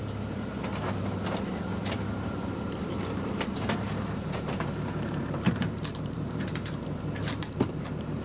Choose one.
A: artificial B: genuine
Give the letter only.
A